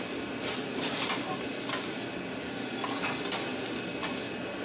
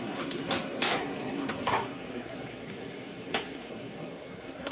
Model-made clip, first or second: second